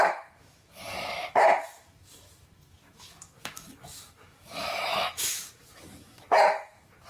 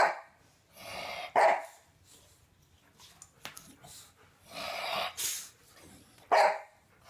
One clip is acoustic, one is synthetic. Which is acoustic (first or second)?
second